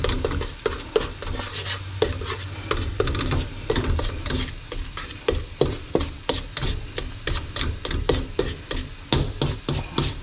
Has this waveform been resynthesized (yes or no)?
no